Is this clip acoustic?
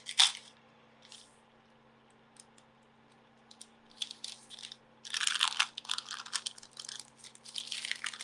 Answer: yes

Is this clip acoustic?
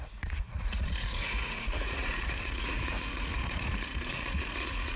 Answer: no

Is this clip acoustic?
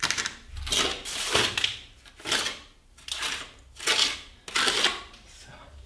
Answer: yes